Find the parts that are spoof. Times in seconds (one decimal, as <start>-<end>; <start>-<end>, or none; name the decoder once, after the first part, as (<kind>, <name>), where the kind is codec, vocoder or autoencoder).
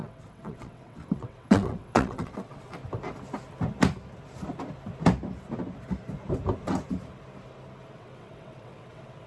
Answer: 0.0-2.8 (vocoder, WaveNeXt); 7.9-9.3